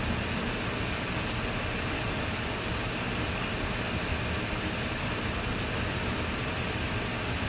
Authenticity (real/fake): real